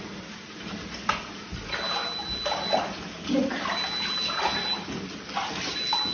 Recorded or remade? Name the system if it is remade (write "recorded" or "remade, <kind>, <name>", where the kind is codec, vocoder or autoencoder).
recorded